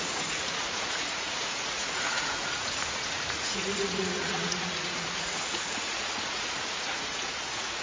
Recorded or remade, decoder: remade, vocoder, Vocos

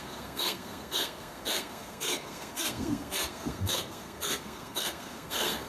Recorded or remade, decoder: remade, codec, SNAC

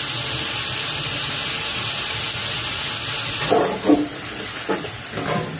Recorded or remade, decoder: recorded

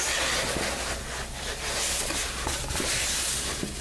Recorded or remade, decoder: recorded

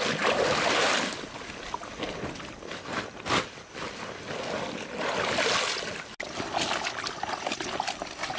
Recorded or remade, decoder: recorded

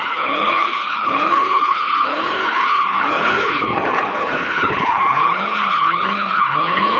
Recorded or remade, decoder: remade, codec, HILCodec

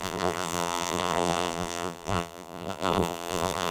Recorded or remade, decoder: remade, vocoder, BigVGAN v2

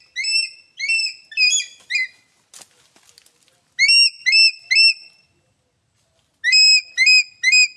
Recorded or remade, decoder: recorded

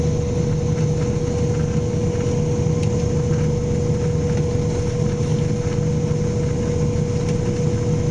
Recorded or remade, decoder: recorded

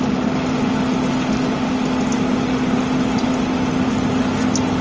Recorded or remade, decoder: recorded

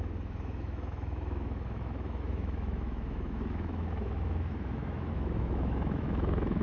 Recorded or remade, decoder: remade, autoencoder, DAC-VAE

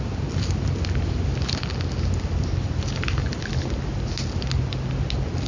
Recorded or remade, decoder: recorded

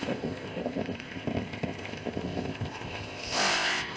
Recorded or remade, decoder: remade, codec, ZipCodec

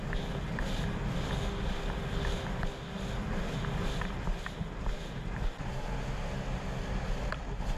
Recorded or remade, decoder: recorded